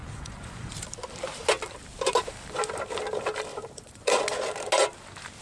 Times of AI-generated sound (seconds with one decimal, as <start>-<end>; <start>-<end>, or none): 0.0-0.7; 3.5-4.2